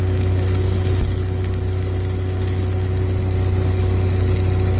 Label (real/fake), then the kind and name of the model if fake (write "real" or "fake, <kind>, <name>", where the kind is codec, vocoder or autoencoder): real